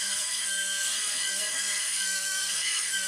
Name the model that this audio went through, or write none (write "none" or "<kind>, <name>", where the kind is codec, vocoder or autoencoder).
codec, SNAC